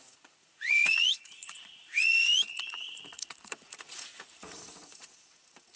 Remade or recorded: remade